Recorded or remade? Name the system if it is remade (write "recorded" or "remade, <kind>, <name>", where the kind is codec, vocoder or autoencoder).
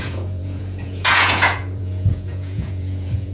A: remade, vocoder, Vocos